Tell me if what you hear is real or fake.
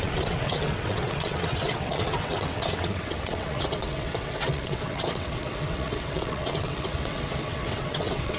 fake